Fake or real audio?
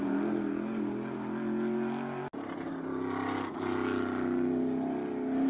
real